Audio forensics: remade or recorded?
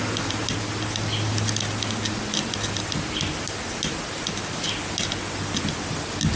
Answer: recorded